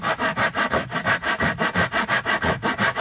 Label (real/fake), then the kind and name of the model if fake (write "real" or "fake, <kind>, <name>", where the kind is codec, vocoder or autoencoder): real